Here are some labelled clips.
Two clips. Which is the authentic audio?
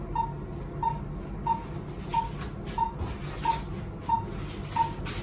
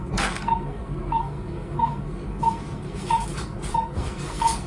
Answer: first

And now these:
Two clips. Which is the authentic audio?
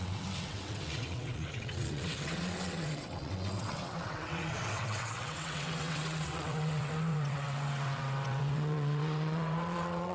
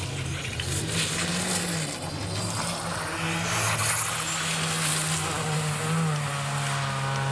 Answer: second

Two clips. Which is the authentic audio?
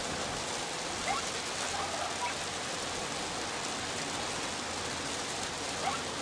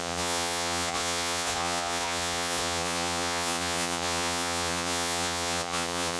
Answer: first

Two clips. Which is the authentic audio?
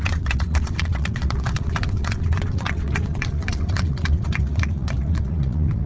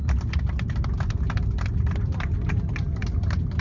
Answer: second